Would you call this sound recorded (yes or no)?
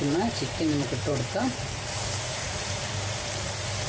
no